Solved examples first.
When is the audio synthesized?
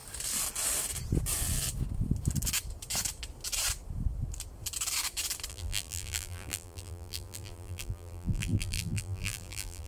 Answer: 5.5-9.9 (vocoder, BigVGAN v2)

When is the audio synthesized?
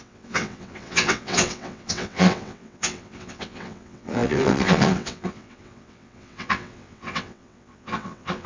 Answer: 0.0-8.5 (vocoder, WaveNeXt)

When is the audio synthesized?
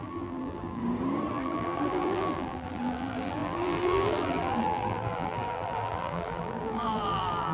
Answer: 0.0-0.8 (vocoder, BigVGAN v2); 1.3-7.5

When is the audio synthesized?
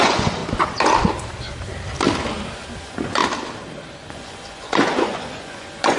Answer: 0.0-0.4 (vocoder, Vocos); 2.8-3.2; 4.1-6.0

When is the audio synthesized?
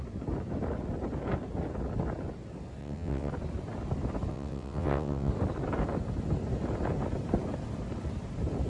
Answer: 2.8-3.3 (vocoder, WaveNeXt); 4.3-5.3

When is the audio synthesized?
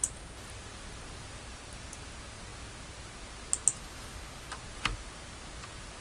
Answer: 0.7-1.4 (vocoder, BigVGAN v2)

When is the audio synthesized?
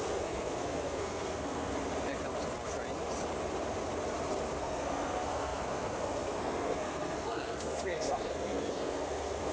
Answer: 0.0-1.7 (codec, SNAC); 4.6-9.5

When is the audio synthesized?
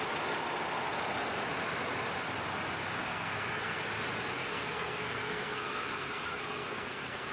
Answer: 3.0-3.8 (codec, SNAC); 4.4-7.3